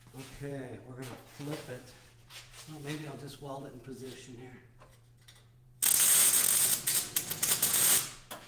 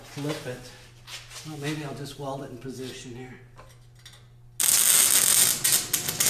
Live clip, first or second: second